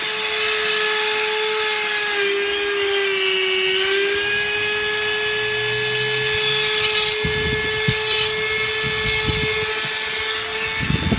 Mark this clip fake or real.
real